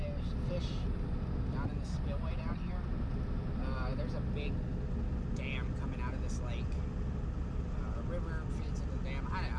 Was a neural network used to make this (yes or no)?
no